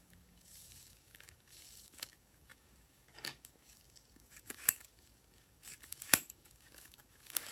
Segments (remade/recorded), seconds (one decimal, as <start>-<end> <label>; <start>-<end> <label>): 0.0-7.5 remade